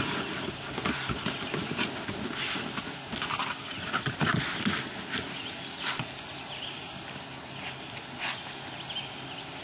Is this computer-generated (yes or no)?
no